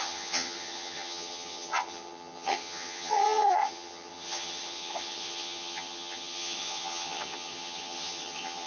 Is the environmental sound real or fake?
fake